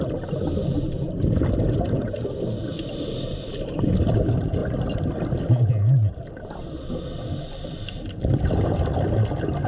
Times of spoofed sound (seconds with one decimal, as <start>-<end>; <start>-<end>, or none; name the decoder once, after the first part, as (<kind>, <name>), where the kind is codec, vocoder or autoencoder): none